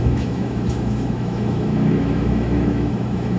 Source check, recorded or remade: remade